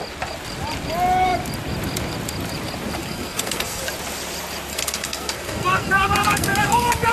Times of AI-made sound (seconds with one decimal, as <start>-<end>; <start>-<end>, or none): 3.0-3.8; 4.7-7.1